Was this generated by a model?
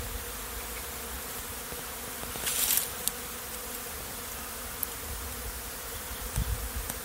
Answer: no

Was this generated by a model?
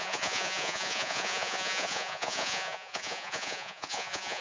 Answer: yes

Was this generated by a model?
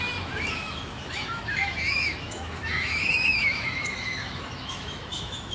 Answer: yes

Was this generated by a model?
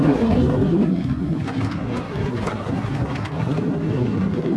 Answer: yes